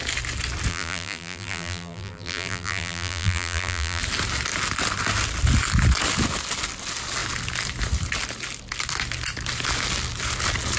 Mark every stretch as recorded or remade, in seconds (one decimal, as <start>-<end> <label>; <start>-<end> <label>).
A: 0.0-0.7 recorded; 0.7-4.0 remade; 4.0-10.8 recorded